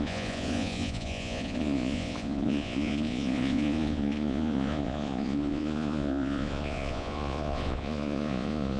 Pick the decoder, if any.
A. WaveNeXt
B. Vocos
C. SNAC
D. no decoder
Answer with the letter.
B